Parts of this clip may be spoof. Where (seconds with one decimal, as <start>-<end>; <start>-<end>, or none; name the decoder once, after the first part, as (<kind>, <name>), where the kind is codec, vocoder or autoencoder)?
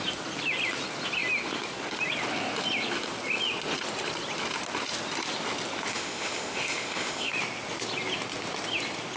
5.9-7.3 (autoencoder, DAC-VAE)